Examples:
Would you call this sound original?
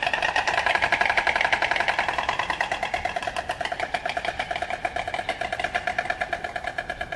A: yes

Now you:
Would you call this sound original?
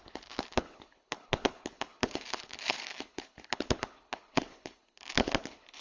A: no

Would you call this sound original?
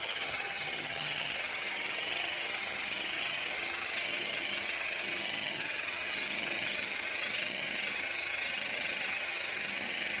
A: no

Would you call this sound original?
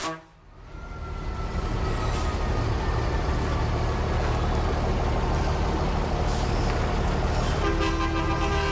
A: yes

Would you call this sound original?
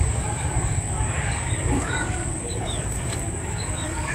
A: no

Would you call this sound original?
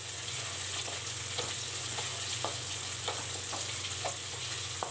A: no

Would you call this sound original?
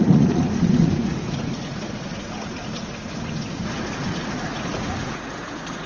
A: no